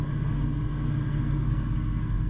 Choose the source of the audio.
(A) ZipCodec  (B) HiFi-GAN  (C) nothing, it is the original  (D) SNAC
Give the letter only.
D